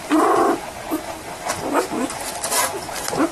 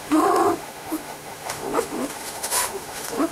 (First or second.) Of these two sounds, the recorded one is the first